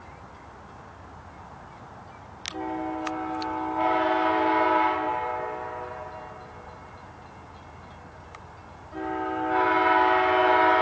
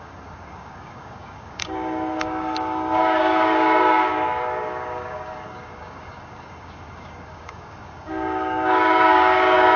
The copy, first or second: second